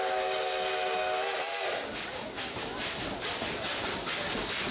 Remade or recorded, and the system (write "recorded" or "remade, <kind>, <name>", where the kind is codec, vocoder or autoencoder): recorded